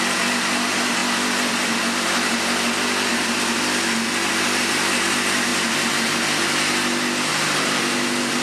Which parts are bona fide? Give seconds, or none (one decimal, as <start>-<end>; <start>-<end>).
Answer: 0.0-7.3; 7.8-8.4